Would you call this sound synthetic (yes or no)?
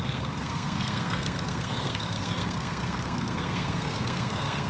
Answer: yes